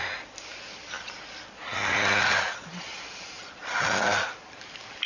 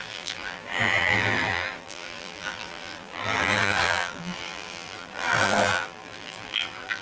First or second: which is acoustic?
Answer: first